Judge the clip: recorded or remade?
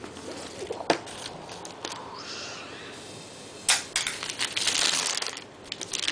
recorded